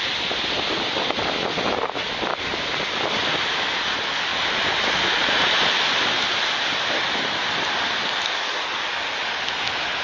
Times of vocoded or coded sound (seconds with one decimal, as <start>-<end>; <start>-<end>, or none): none